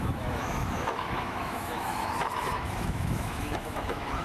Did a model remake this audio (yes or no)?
yes